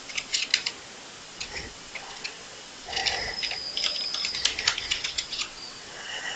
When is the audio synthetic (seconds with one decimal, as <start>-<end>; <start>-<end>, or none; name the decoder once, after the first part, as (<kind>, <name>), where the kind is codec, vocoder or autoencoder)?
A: 0.0-0.5 (vocoder, WaveNeXt); 1.2-3.0; 4.8-6.4